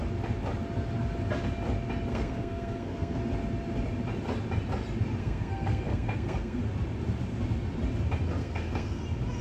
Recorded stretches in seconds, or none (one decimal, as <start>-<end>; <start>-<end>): 0.0-2.1; 3.2-5.2; 6.6-8.4; 9.0-9.4